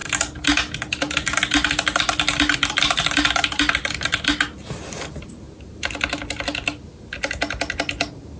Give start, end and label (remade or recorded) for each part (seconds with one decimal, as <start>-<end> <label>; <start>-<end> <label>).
0.0-8.4 recorded